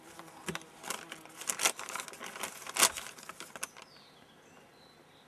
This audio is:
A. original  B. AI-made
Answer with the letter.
A